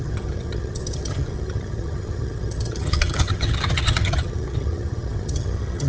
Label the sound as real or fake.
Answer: fake